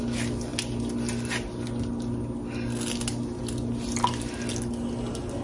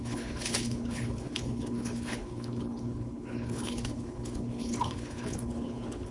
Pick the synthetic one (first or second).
second